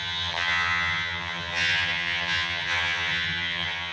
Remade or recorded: remade